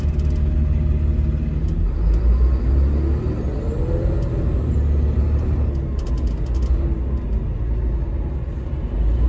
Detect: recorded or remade recorded